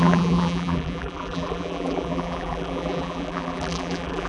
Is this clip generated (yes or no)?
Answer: yes